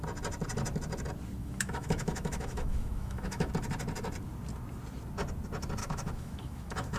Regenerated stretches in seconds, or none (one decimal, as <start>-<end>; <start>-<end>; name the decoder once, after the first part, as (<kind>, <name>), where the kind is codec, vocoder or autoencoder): 1.4-3.5 (autoencoder, DAC-VAE); 5.8-7.0